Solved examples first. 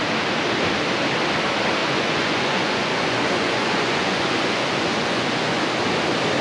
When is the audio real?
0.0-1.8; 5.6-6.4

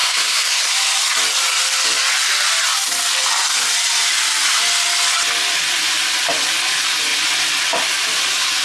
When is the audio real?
0.7-8.6

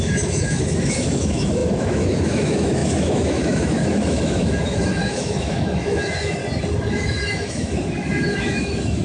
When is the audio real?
6.4-6.9

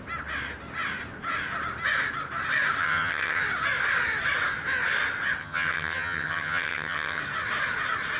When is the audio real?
0.0-2.8; 3.4-5.4; 7.2-8.2

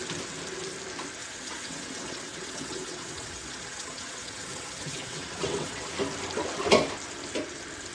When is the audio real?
0.0-1.2; 5.9-7.9

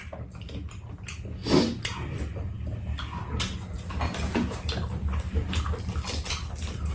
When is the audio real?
0.0-6.9

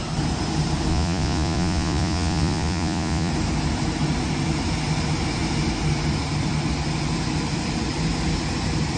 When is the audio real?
0.0-0.9; 3.3-9.0

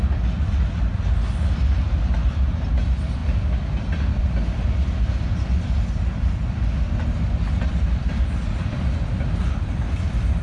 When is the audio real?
0.0-10.4